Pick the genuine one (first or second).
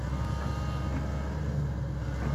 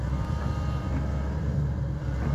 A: first